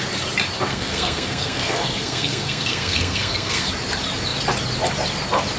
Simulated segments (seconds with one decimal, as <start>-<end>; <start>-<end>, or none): 0.7-3.7